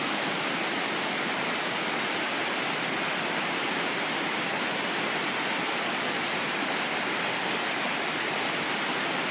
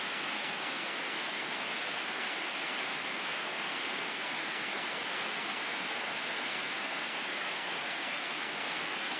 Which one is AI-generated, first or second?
second